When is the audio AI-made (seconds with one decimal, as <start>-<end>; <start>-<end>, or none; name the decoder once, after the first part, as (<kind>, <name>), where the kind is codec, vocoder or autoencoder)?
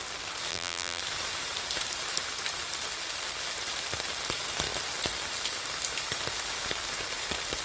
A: 0.5-1.0 (vocoder, BigVGAN v2)